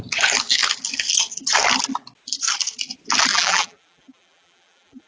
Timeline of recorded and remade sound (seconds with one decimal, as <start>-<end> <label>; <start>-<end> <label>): 0.0-3.3 recorded; 3.3-5.1 remade